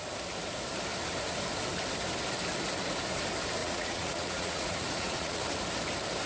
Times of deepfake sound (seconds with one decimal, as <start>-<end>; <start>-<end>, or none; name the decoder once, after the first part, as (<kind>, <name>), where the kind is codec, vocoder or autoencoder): 3.6-5.4 (vocoder, Vocos)